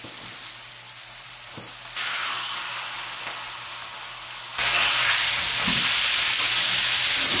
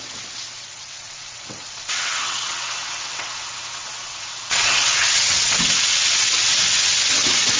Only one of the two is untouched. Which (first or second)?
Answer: first